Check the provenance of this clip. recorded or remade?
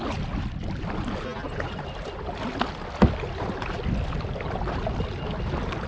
recorded